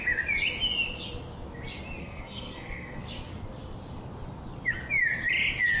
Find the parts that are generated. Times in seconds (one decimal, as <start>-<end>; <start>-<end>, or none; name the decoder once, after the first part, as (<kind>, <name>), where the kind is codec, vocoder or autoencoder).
2.0-3.0 (codec, SNAC)